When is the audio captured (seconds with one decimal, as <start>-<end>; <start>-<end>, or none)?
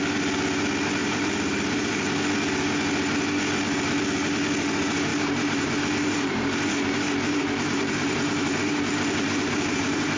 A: 0.0-1.0; 1.9-5.1